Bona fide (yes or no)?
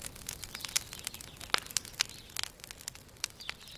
yes